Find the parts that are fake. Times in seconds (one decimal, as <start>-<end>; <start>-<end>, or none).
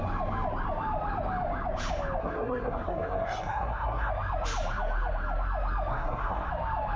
2.2-4.1; 5.9-6.5